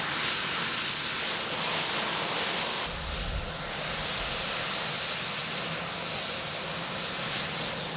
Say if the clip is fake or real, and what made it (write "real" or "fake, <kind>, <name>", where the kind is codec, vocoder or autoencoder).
real